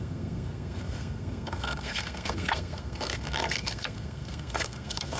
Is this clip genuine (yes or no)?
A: no